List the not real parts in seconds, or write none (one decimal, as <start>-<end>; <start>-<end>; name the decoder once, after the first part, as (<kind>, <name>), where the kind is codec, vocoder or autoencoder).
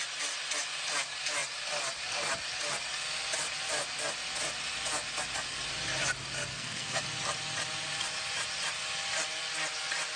6.5-7.0 (codec, SNAC)